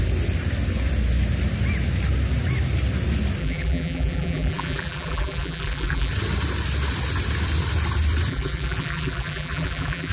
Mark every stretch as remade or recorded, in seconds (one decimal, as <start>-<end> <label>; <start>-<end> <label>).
0.0-3.4 recorded; 3.4-6.1 remade; 6.1-8.3 recorded; 8.3-10.1 remade